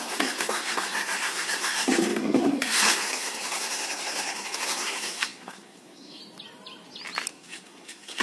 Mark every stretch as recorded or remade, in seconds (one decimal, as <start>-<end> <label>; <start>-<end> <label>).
0.0-6.2 remade; 6.2-7.3 recorded; 7.3-8.2 remade